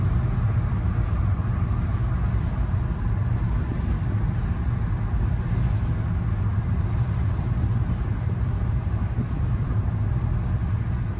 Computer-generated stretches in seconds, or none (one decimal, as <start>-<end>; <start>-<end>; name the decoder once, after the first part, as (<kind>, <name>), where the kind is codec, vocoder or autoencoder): 8.6-9.7 (vocoder, BigVGAN v2)